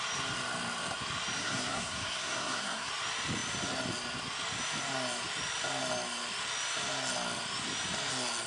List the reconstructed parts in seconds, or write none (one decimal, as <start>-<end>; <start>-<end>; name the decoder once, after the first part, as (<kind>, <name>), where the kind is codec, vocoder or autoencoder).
1.4-2.9 (codec, SNAC)

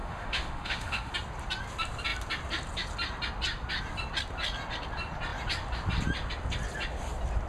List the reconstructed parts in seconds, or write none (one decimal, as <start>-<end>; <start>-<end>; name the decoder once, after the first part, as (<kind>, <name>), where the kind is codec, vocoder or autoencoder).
0.0-1.1 (autoencoder, DAC-VAE)

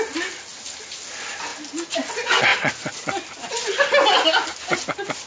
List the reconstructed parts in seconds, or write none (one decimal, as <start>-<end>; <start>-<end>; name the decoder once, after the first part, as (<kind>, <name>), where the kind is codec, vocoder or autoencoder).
none